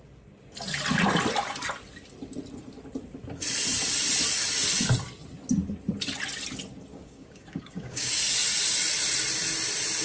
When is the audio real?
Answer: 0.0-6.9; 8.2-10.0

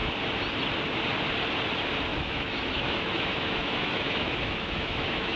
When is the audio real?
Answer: 0.0-2.1

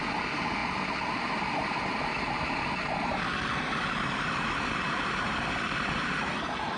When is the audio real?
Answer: 0.0-6.8